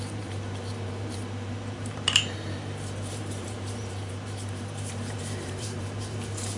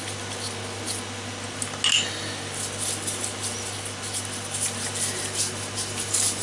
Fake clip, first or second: first